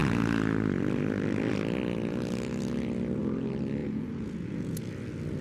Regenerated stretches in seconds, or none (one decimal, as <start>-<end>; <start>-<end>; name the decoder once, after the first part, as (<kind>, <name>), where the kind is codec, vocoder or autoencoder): 3.8-4.8 (vocoder, Vocos)